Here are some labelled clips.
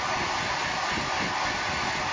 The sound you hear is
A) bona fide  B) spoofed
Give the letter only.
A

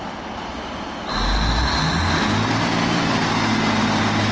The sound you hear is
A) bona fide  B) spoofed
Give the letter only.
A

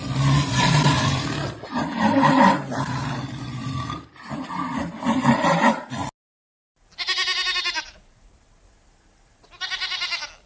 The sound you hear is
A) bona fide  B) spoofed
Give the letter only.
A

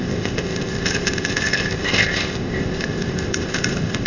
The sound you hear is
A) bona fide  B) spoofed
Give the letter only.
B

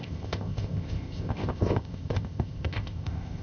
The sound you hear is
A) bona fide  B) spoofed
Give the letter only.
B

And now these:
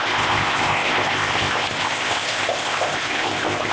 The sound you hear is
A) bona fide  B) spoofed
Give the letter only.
B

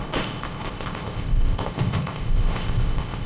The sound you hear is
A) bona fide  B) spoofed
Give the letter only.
B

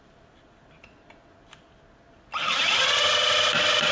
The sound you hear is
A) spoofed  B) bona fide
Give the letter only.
B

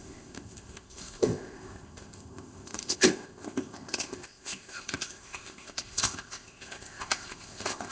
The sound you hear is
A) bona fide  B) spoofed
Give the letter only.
B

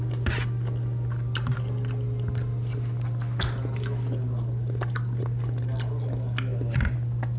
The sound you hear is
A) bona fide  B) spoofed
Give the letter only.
A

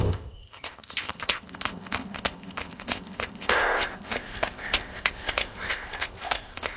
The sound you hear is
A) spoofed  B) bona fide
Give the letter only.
A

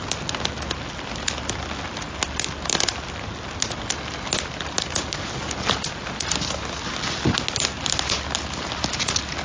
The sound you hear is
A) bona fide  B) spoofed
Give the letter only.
A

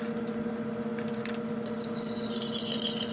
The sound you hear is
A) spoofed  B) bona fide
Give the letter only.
B